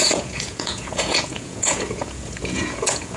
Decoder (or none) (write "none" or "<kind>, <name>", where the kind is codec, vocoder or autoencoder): vocoder, Vocos